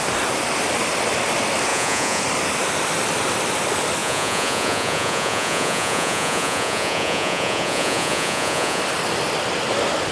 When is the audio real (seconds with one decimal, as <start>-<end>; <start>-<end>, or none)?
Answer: 0.0-1.7; 2.2-4.0; 8.8-10.1